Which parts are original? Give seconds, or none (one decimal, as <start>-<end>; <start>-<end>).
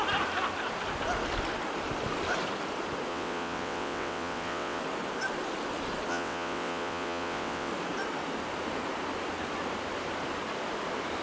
0.0-3.1; 4.8-6.1; 7.7-11.2